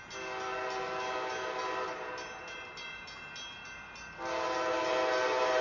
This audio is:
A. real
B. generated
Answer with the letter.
A